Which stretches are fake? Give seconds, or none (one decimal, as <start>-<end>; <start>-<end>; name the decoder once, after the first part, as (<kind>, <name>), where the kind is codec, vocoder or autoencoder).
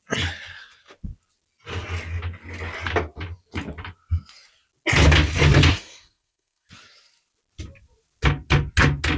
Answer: 5.7-6.7 (codec, SNAC)